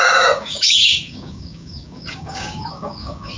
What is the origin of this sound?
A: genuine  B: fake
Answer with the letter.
B